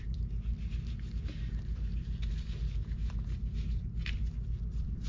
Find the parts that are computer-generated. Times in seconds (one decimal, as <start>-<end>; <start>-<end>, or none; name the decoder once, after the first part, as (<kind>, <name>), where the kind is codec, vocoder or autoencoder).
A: none